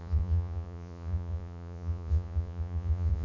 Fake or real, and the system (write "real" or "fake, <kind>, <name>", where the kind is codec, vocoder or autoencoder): fake, vocoder, Vocos